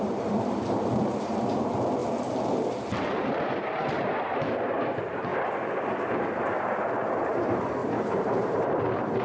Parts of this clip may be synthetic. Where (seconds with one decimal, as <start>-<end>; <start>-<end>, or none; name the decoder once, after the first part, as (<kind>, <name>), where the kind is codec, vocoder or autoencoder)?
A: 0.0-2.0 (vocoder, BigVGAN v2); 3.0-9.2